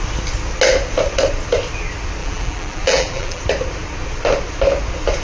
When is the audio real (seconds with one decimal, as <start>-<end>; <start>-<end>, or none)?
0.0-2.2; 3.4-5.2